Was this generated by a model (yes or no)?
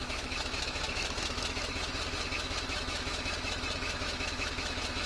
yes